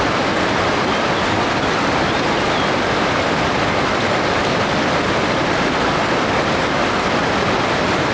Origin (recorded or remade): recorded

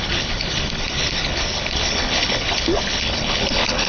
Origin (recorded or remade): remade